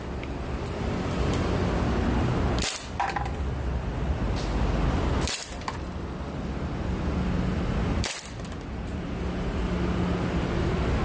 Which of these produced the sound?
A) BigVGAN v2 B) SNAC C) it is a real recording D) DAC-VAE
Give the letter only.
C